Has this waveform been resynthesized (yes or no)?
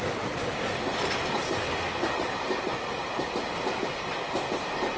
no